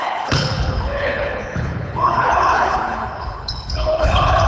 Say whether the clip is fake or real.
fake